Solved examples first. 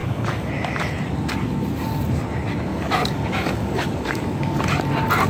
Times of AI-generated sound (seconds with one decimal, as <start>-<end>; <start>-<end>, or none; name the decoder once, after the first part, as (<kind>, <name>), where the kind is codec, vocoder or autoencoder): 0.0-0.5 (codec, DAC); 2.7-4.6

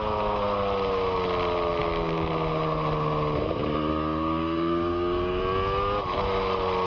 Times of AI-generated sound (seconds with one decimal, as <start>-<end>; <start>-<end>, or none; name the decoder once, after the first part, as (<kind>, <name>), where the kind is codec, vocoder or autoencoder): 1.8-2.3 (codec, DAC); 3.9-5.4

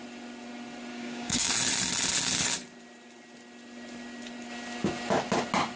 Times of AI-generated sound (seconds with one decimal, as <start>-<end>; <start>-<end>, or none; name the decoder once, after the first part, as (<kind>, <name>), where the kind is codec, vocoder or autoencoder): 0.9-1.5 (codec, DAC)

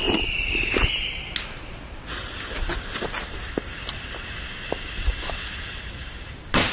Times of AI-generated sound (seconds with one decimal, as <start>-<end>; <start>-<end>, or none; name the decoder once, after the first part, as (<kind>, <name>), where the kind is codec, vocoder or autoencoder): none

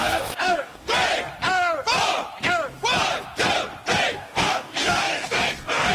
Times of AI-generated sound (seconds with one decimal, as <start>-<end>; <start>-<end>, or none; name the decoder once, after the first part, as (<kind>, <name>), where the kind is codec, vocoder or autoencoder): 0.0-0.9 (codec, DAC); 4.1-5.9

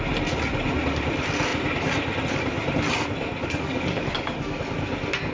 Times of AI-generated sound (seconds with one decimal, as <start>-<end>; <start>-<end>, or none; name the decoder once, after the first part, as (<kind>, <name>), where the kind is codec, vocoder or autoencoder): 3.4-4.6 (codec, DAC)